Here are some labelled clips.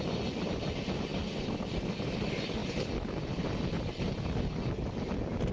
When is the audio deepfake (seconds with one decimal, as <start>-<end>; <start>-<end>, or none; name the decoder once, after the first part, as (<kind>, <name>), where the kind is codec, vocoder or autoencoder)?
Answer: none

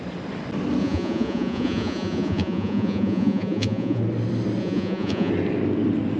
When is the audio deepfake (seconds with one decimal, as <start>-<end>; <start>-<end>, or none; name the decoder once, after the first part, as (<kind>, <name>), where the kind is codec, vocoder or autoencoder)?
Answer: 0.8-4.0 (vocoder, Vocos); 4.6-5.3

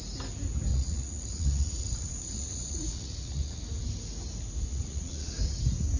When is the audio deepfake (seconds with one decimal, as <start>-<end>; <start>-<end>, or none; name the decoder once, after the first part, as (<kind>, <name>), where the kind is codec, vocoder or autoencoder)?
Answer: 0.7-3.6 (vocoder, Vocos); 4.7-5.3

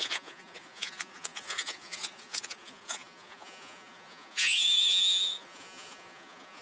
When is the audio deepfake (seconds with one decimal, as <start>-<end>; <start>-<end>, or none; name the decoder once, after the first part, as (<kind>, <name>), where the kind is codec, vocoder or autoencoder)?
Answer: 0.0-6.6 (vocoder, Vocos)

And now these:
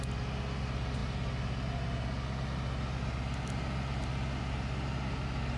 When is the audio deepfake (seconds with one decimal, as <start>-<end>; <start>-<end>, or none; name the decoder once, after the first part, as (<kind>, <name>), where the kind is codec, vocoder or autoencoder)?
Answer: none

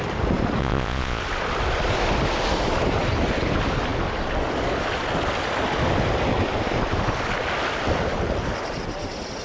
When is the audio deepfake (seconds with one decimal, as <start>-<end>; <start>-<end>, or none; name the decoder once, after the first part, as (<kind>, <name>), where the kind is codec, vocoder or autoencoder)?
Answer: 0.6-1.2 (vocoder, Vocos)

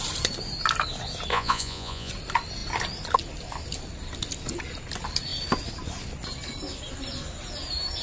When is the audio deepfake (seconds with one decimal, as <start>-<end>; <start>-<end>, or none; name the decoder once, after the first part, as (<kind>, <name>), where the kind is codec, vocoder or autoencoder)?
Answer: 1.3-2.1 (vocoder, Vocos)

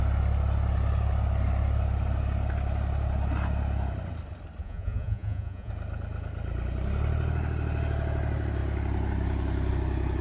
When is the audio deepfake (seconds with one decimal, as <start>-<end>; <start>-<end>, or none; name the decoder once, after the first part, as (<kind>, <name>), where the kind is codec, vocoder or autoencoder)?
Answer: 4.6-5.7 (vocoder, Vocos)